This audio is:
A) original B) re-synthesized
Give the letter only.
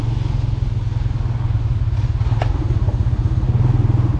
A